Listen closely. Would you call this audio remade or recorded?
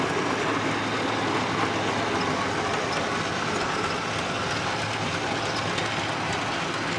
recorded